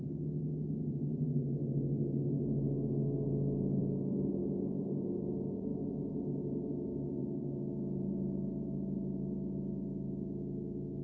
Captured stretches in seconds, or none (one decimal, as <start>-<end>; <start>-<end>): 0.0-3.8; 4.3-7.2; 8.1-11.0

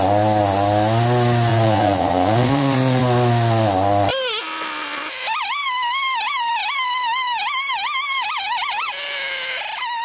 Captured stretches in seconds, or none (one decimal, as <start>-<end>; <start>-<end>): 0.0-1.5; 3.0-10.0

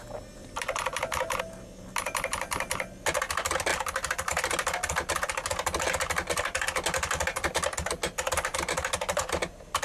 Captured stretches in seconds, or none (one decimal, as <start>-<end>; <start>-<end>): 0.0-0.4; 1.4-3.7; 4.5-9.8

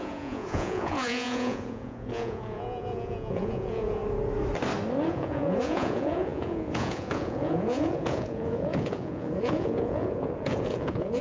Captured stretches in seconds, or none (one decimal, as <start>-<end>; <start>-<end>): 4.0-5.1

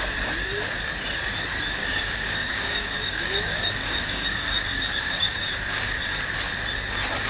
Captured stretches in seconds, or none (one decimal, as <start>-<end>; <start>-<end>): 0.0-1.8; 6.2-7.3

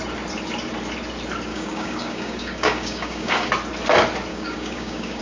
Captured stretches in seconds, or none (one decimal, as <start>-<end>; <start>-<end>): 0.0-1.5; 3.5-4.3